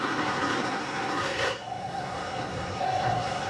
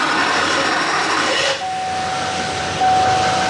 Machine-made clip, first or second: first